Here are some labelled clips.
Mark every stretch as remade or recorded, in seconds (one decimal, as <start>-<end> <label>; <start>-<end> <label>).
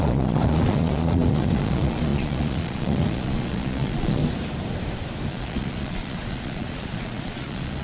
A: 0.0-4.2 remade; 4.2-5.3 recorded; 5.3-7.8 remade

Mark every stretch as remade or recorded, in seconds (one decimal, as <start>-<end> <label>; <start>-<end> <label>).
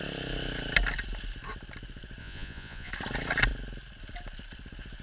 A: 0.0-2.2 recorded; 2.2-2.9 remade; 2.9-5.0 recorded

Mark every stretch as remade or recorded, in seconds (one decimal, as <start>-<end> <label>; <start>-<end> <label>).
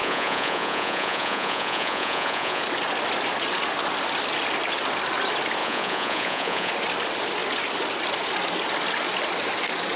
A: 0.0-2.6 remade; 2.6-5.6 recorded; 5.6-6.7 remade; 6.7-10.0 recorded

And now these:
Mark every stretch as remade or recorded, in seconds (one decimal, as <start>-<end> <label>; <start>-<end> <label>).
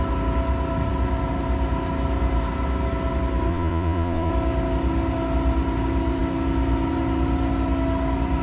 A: 0.0-3.5 recorded; 3.5-4.3 remade; 4.3-8.4 recorded